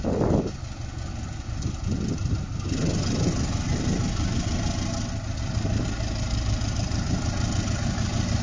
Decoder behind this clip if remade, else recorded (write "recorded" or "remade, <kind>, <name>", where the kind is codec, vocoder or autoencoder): recorded